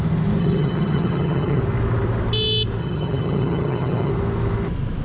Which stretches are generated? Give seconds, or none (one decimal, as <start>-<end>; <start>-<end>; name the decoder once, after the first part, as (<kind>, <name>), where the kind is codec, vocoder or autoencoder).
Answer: 0.4-1.6 (vocoder, HiFi-GAN); 2.8-4.1